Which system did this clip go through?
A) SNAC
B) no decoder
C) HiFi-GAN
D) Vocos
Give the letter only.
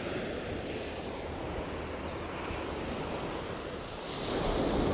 B